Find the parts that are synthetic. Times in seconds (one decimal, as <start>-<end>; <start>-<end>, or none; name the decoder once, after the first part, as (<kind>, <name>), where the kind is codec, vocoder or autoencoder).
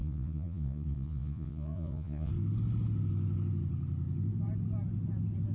0.0-2.3 (vocoder, Vocos)